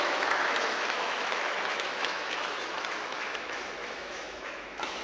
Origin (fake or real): fake